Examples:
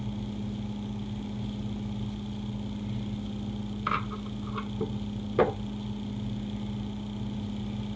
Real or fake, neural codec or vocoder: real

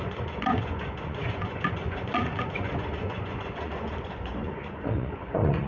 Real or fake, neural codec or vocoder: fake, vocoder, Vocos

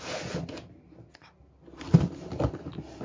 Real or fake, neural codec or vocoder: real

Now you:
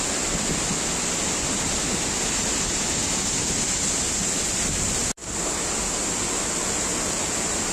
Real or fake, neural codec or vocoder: real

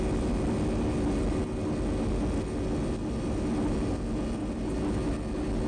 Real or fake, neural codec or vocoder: real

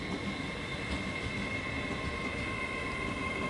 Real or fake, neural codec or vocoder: real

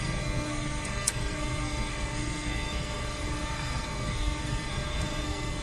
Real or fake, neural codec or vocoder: fake, codec, SNAC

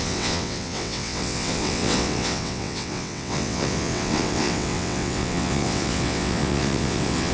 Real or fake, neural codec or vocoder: fake, vocoder, WaveNeXt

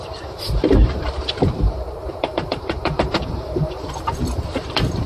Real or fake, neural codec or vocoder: fake, vocoder, BigVGAN v2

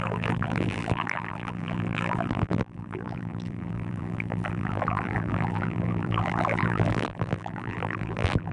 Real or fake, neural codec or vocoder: fake, vocoder, BigVGAN v2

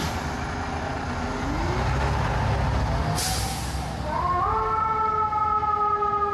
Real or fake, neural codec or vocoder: real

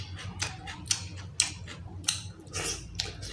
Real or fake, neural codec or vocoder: real